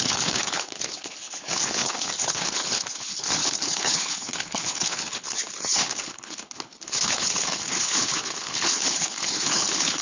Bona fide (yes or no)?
no